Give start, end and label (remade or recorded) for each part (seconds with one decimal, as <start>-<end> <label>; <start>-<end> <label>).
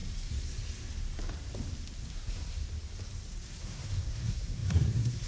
0.0-2.1 recorded; 2.1-2.6 remade; 2.6-3.6 recorded; 3.6-5.3 remade